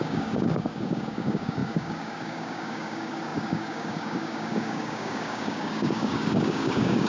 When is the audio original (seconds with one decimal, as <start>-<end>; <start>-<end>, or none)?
none